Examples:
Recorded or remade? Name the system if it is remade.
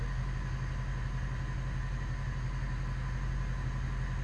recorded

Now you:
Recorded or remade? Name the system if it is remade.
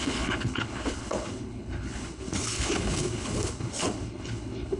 remade, codec, HILCodec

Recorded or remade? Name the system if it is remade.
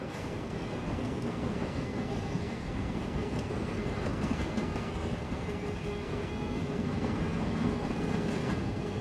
remade, codec, SNAC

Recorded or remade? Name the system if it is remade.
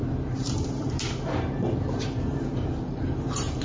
remade, vocoder, BigVGAN v2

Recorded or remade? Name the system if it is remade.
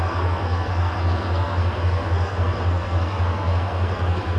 remade, codec, SNAC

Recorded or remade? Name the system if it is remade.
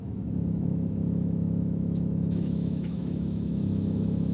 remade, autoencoder, DAC-VAE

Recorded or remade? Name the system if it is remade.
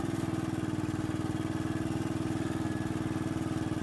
recorded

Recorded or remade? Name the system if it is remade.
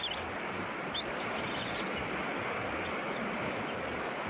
recorded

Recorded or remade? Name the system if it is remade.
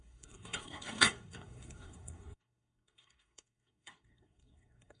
remade, codec, SNAC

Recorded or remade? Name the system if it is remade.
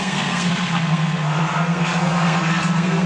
remade, codec, SNAC